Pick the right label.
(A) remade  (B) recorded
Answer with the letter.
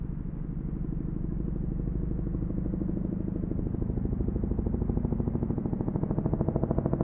B